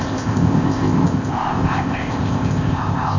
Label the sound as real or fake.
fake